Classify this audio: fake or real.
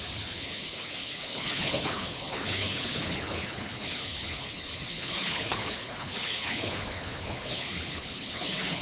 fake